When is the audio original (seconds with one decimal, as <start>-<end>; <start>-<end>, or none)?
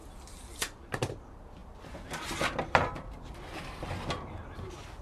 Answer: 0.0-5.0